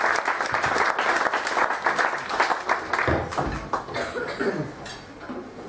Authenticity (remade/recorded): recorded